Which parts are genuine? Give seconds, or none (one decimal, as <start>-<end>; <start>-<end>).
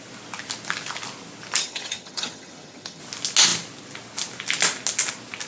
0.0-1.6; 3.0-5.5